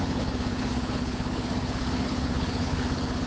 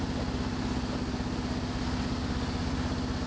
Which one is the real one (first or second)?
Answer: second